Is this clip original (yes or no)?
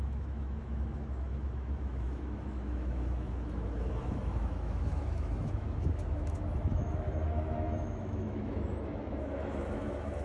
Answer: no